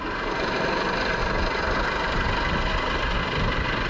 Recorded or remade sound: recorded